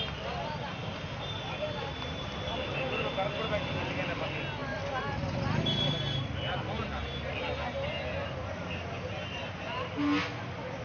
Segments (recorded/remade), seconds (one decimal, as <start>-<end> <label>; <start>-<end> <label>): 0.0-0.8 recorded; 0.8-3.1 remade; 3.1-4.6 recorded; 4.6-5.6 remade; 5.6-10.8 recorded